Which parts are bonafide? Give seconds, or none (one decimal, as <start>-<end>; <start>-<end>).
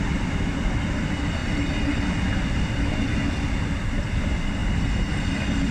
0.0-5.7